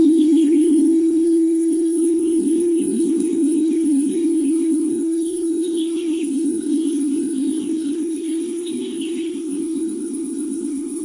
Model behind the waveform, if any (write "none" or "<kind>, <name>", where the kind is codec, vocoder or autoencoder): codec, SNAC